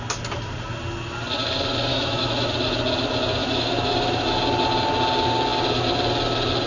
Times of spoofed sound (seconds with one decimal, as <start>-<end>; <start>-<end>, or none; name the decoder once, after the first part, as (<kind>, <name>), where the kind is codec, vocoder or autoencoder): 1.9-2.5 (autoencoder, DAC-VAE); 3.4-4.4